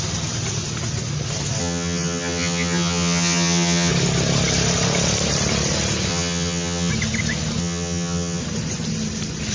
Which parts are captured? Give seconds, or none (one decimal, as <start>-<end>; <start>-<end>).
0.0-1.6; 3.9-6.1; 6.9-7.6; 8.4-9.5

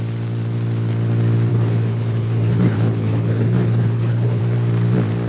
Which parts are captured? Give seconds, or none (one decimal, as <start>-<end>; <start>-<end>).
0.0-1.5; 4.4-5.3

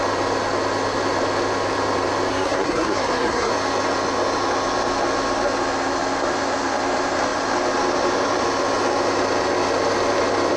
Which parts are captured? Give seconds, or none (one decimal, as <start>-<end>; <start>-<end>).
0.0-2.3; 3.5-10.6

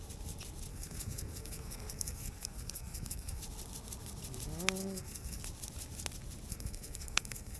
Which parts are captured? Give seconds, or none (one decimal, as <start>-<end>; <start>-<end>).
0.0-0.7; 3.4-4.8; 5.4-6.5

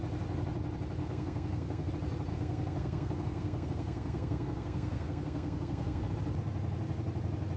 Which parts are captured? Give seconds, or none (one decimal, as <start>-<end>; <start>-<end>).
0.0-1.0; 1.9-2.3; 6.1-7.6